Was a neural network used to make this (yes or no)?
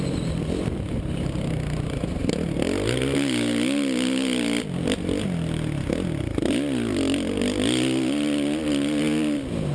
no